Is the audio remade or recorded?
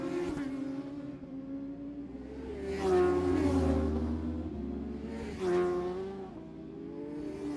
recorded